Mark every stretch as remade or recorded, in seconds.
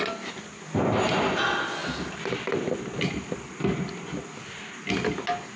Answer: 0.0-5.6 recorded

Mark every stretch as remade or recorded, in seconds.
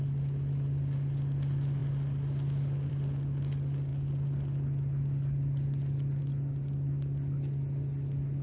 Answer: 0.0-8.4 recorded